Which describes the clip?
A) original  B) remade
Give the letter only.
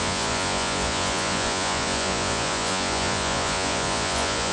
B